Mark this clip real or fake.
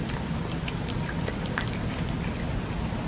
real